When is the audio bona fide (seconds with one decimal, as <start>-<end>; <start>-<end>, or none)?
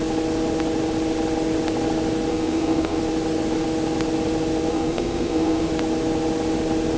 0.0-2.3; 3.0-4.7; 5.7-7.0